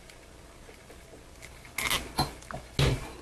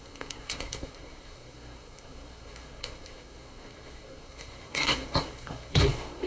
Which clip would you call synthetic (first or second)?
second